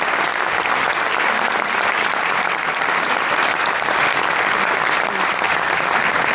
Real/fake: fake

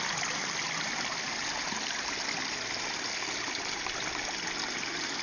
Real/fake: real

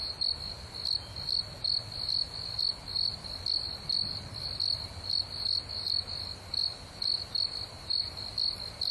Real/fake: real